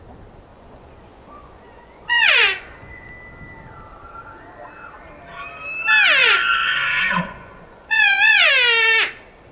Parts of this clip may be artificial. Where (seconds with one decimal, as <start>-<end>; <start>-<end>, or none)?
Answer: 0.5-3.1; 6.2-8.5